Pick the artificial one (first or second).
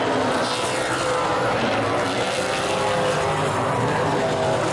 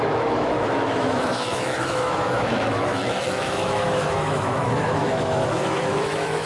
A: second